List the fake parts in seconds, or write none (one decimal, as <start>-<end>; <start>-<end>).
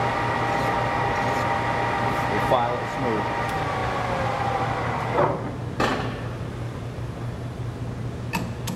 5.9-7.6